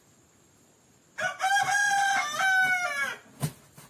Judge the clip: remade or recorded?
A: recorded